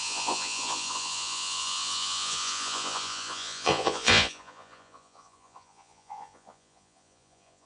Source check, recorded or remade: remade